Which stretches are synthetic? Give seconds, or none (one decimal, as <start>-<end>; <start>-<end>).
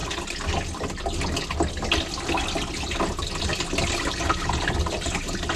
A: none